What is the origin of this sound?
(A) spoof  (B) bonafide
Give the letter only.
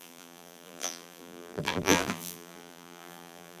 A